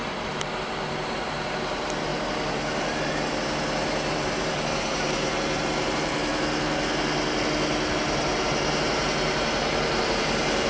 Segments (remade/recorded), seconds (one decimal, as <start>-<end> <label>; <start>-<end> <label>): 0.0-6.3 remade; 6.3-8.2 recorded; 8.2-10.7 remade